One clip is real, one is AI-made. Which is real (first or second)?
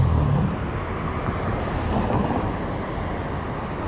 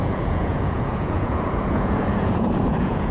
first